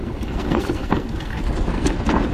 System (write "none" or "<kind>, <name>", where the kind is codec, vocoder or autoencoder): codec, SNAC